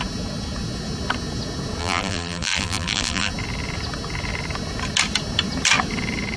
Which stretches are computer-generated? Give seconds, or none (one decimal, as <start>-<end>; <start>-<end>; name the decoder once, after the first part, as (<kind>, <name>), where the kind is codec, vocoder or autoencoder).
1.8-3.3 (vocoder, BigVGAN v2)

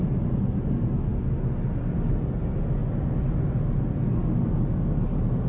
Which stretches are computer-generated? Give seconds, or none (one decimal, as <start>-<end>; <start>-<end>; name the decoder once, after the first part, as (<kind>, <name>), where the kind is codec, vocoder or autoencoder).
none

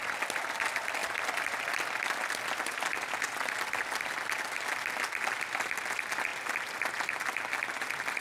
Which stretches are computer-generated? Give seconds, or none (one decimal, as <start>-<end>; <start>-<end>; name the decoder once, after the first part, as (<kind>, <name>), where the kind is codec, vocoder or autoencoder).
none

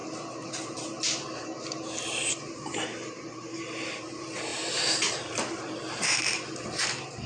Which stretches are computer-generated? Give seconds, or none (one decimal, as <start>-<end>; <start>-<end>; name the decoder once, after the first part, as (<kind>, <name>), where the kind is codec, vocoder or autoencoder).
2.3-7.3 (vocoder, BigVGAN v2)

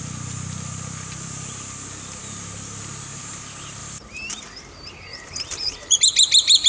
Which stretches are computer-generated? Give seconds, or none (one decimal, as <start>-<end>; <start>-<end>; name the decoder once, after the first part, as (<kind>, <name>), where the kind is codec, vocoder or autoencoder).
3.8-4.4 (vocoder, BigVGAN v2); 5.1-6.0

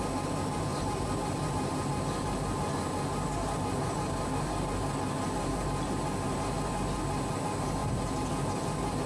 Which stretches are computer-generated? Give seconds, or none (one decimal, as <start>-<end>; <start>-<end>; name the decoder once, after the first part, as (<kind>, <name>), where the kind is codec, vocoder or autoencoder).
7.8-8.3 (vocoder, BigVGAN v2)

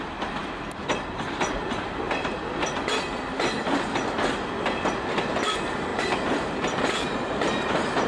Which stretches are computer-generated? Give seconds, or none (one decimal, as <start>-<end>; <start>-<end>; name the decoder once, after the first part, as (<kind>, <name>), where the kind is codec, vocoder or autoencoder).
5.9-8.1 (vocoder, BigVGAN v2)

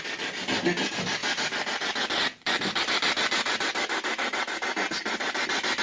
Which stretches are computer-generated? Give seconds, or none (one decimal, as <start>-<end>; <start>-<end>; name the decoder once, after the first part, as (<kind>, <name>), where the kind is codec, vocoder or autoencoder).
none